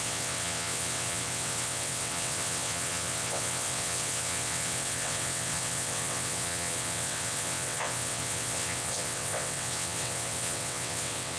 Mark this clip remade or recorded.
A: remade